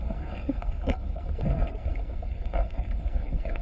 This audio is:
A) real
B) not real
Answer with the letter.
B